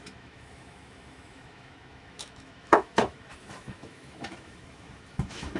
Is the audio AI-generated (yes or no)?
yes